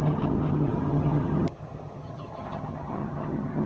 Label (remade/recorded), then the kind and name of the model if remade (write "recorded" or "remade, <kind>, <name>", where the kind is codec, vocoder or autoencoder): remade, vocoder, HiFi-GAN